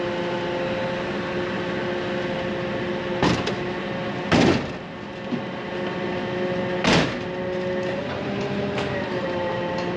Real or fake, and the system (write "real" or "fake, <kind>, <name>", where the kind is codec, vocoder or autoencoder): real